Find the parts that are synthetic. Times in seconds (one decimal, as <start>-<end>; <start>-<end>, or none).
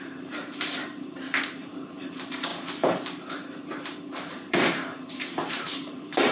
0.0-6.3